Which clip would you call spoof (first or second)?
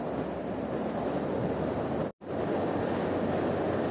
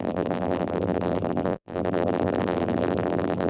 second